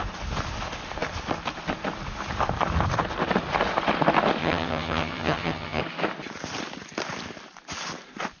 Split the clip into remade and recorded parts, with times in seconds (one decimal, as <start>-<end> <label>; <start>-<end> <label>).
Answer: 0.0-4.4 recorded; 4.4-5.8 remade; 5.8-8.4 recorded